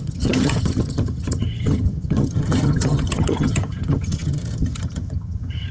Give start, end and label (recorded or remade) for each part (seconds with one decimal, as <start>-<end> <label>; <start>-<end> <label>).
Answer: 0.0-5.7 remade